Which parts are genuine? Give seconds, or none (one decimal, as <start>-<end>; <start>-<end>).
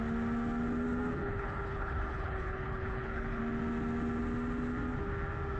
0.0-1.2; 3.4-5.6